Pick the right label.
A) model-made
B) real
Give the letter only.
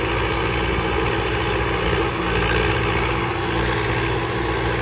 B